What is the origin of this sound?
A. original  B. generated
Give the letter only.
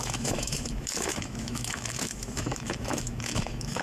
B